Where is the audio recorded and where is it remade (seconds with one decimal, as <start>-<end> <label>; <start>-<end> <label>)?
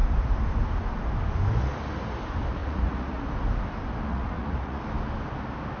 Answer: 0.0-2.6 recorded; 2.6-3.2 remade; 3.2-4.1 recorded; 4.1-4.8 remade; 4.8-5.8 recorded